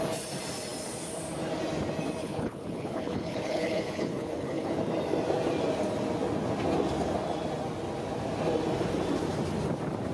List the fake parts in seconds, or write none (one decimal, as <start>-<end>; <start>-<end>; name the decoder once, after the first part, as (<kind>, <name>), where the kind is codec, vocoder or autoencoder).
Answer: 2.2-4.7 (codec, HILCodec)